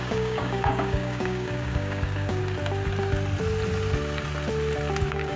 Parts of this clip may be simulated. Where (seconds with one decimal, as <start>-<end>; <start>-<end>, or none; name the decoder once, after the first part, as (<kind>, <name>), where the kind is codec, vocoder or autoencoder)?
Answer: 0.0-2.4 (codec, DAC); 5.0-5.4

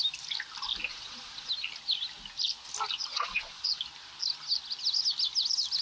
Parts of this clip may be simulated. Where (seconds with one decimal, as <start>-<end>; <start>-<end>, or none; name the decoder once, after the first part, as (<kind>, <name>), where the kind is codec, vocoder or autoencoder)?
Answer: 0.9-1.5 (vocoder, Vocos); 3.1-3.8

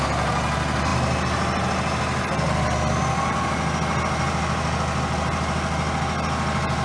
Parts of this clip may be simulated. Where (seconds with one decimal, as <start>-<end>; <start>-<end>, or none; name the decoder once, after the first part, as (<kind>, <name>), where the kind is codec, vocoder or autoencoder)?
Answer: none

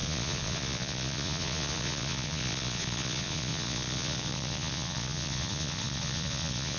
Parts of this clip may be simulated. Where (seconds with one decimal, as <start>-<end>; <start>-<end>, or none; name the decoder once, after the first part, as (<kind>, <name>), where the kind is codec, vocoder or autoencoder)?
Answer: 0.0-6.8 (vocoder, Vocos)

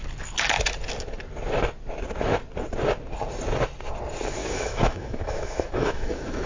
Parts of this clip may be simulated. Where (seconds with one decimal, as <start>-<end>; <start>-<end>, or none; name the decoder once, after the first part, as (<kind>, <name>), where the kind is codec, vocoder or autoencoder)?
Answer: 4.4-6.5 (autoencoder, DAC-VAE)

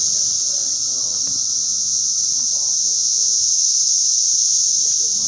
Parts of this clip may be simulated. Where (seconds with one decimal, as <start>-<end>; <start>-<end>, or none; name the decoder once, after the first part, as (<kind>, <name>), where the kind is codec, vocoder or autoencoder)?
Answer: 1.6-2.1 (vocoder, Vocos); 2.8-3.4

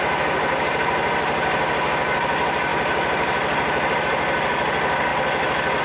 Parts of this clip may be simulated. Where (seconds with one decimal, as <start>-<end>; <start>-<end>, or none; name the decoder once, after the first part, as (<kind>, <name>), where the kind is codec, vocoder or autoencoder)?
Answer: none